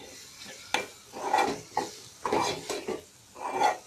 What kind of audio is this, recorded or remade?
recorded